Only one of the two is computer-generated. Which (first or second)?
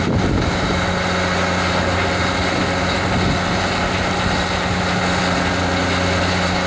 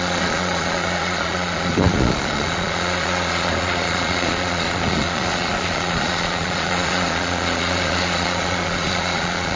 second